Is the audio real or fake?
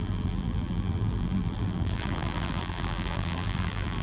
fake